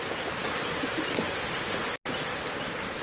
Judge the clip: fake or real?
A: real